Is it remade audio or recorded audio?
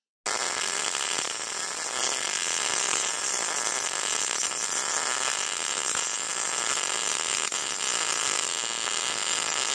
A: recorded